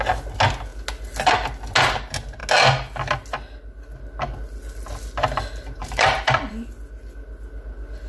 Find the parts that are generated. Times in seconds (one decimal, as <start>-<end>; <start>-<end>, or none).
5.8-6.5